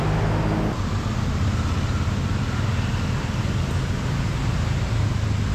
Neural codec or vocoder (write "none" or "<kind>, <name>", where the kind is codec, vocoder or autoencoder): none